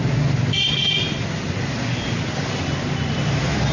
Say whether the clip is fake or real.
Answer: real